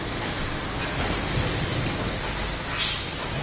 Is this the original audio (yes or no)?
yes